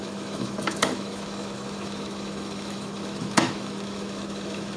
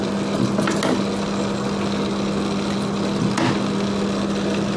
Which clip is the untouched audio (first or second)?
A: second